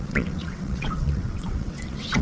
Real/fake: fake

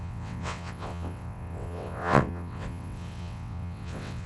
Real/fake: fake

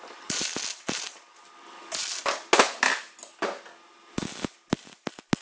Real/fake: real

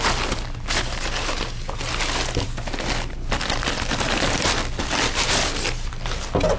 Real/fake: real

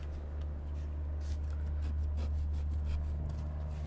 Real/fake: real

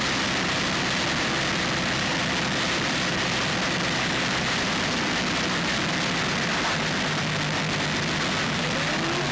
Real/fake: real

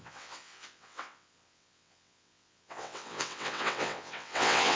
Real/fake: fake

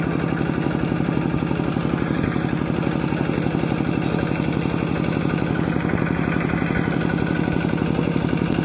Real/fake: real